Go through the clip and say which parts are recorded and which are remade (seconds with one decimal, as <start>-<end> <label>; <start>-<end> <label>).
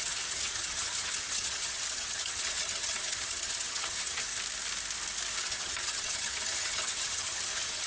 0.0-4.3 remade; 4.3-5.4 recorded; 5.4-7.9 remade